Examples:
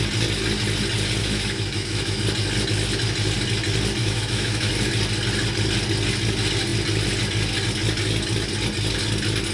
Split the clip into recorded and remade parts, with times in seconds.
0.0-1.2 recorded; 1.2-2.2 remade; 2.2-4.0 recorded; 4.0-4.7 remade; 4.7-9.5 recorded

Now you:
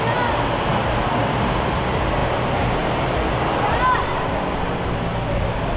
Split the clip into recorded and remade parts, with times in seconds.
0.0-5.8 recorded

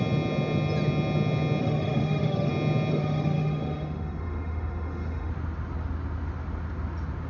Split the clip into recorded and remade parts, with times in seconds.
0.0-1.6 recorded; 1.6-2.5 remade; 2.5-2.9 recorded; 2.9-5.3 remade; 5.3-7.3 recorded

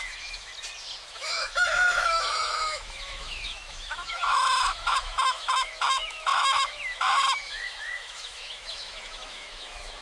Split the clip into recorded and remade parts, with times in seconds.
0.0-0.5 remade; 0.5-1.1 recorded; 1.1-10.0 remade

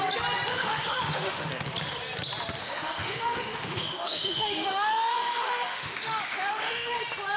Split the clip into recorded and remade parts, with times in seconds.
0.0-0.5 recorded; 0.5-1.5 remade; 1.5-2.6 recorded; 2.6-7.0 remade; 7.0-7.4 recorded

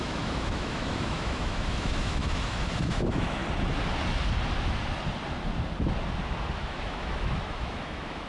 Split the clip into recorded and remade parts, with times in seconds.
0.0-3.4 remade; 3.4-6.5 recorded; 6.5-8.3 remade

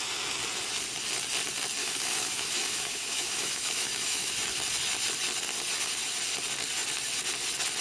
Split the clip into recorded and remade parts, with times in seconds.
0.0-1.8 recorded; 1.8-4.3 remade; 4.3-7.8 recorded

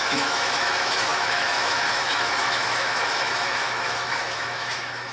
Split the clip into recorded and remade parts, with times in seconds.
0.0-5.1 remade